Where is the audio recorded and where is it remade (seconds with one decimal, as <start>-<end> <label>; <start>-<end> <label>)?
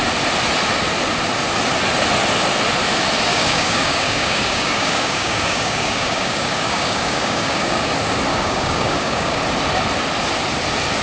0.0-3.3 recorded; 3.3-7.9 remade; 7.9-8.3 recorded; 8.3-9.4 remade; 9.4-11.0 recorded